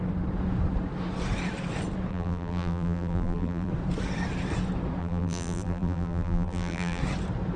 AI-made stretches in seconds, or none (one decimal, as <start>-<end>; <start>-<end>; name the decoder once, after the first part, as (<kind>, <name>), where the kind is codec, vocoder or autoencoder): 2.1-3.7 (vocoder, BigVGAN v2); 5.0-7.0